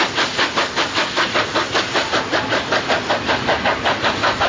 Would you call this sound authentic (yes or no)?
yes